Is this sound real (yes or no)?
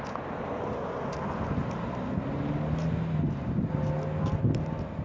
yes